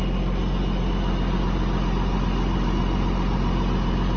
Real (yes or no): yes